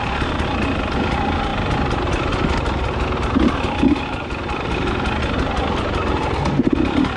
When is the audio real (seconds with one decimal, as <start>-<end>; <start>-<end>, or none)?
0.0-7.2